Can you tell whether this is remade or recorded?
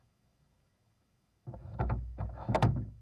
remade